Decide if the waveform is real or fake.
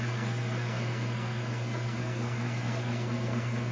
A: fake